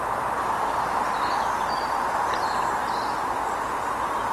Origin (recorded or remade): recorded